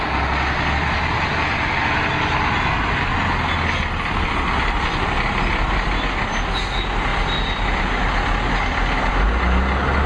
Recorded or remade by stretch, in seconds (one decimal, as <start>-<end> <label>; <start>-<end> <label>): 0.0-10.1 recorded